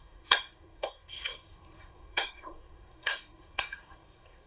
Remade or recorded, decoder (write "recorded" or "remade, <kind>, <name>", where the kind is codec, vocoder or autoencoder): remade, codec, SNAC